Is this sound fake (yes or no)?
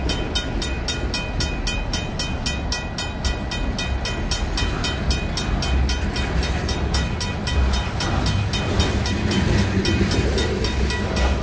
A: no